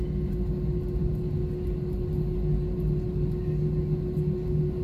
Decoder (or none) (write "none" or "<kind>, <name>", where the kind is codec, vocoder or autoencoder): none